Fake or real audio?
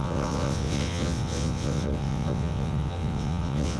fake